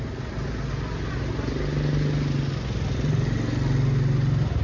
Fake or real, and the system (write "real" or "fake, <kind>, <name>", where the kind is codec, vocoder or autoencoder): real